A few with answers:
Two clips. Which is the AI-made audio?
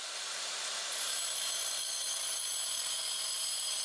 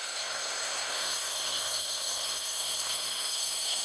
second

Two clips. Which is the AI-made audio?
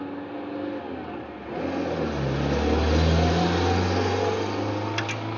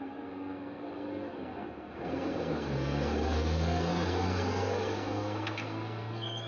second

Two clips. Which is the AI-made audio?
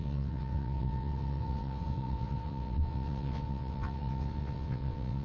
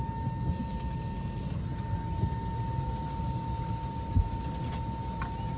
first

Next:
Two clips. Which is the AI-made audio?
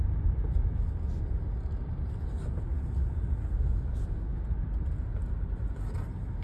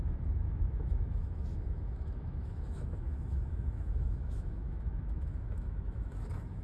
second